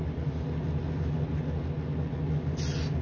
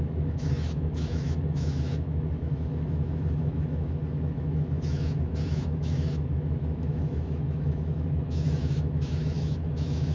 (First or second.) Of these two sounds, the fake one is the second